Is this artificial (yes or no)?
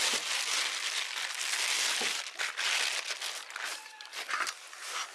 no